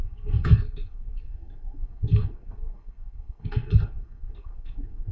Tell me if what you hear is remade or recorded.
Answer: remade